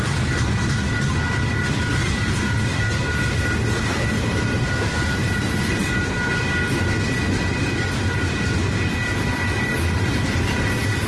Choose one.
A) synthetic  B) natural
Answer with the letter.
B